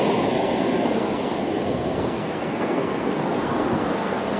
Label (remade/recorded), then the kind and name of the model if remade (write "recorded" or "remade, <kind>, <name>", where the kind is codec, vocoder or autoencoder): remade, codec, SNAC